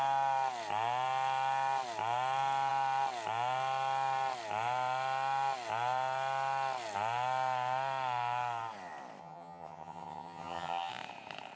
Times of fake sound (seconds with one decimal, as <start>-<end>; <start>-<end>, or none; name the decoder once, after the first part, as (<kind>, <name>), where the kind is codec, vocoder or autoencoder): 9.2-10.9 (vocoder, HiFi-GAN)